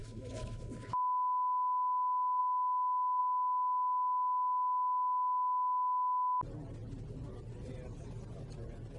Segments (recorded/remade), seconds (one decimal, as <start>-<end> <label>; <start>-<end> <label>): 0.0-0.9 remade; 0.9-9.0 recorded